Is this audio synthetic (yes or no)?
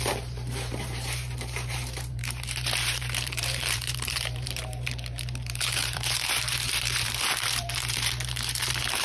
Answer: yes